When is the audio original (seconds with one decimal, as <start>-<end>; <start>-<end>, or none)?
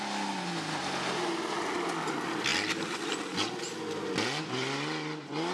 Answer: 0.0-5.5